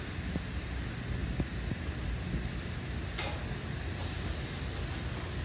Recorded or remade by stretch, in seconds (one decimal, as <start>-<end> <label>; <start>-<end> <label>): 0.0-5.4 recorded

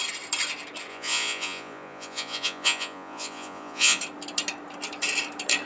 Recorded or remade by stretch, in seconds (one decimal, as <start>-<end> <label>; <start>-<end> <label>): 0.0-0.9 recorded; 0.9-4.0 remade; 4.0-5.7 recorded

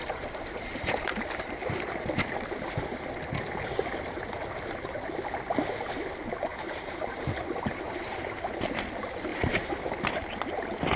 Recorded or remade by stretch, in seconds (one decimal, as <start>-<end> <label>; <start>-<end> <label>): 0.0-1.8 remade; 1.8-6.5 recorded; 6.5-7.9 remade; 7.9-9.3 recorded; 9.3-9.8 remade; 9.8-11.0 recorded

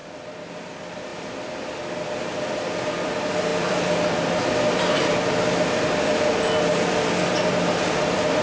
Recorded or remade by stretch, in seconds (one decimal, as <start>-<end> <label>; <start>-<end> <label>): 0.0-0.7 recorded; 0.7-8.4 remade

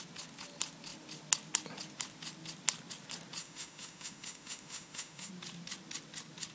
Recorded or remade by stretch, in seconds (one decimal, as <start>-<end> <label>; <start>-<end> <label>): 0.0-3.4 recorded; 3.4-5.3 remade; 5.3-6.5 recorded

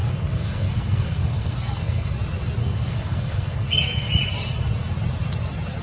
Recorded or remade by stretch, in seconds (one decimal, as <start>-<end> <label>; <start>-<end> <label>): 0.0-2.1 remade; 2.1-2.6 recorded; 2.6-4.1 remade; 4.1-5.8 recorded

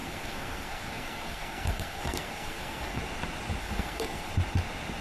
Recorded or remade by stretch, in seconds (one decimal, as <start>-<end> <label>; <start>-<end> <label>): 0.0-3.0 remade; 3.0-3.6 recorded; 3.6-4.3 remade; 4.3-5.0 recorded